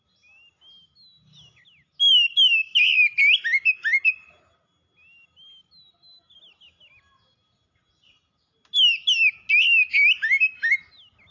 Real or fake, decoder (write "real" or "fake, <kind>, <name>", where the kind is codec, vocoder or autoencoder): real